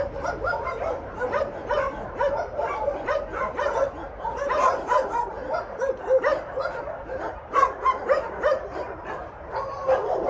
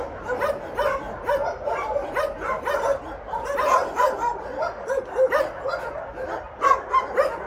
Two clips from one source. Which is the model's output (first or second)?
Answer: first